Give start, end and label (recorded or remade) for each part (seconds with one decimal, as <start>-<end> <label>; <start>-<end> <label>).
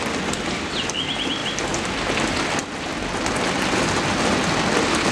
0.0-5.1 recorded